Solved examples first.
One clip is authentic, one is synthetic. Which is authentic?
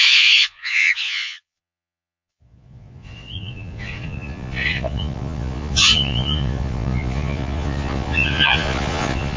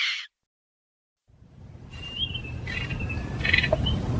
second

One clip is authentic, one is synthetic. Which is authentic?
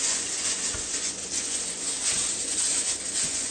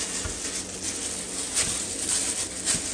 second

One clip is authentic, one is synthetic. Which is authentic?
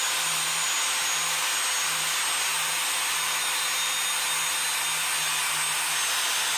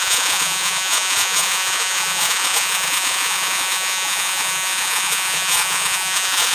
first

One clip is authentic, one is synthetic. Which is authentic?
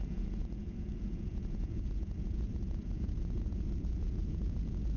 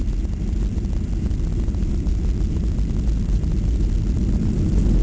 second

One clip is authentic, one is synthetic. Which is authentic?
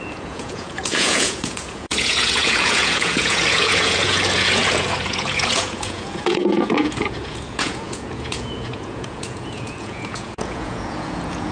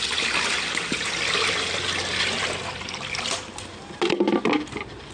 second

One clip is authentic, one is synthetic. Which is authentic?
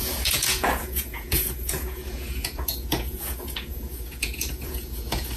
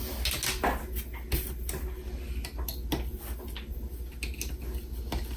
second